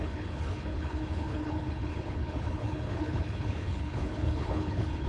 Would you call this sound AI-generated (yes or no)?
yes